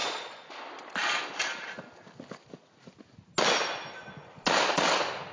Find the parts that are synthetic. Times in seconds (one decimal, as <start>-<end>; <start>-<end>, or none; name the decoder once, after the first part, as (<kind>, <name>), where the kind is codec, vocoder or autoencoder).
0.0-0.5 (vocoder, Vocos)